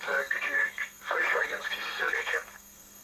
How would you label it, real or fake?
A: fake